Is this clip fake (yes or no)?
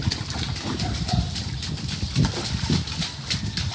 no